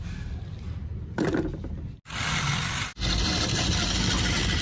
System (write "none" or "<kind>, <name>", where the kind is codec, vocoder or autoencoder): none